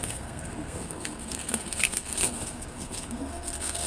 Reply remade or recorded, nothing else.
remade